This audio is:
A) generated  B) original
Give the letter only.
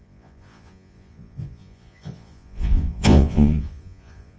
A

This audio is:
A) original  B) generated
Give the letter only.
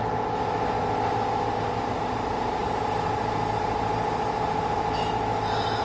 A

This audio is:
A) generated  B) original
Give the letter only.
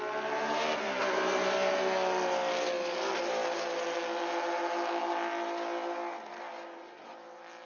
B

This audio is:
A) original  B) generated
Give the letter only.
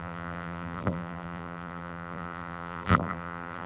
B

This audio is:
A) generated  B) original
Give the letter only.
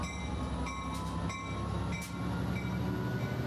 B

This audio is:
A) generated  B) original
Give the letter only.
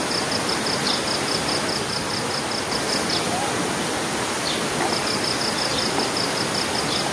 B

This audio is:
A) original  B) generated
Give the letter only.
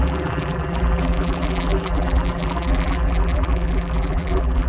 B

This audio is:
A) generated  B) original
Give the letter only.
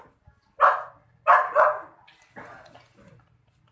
B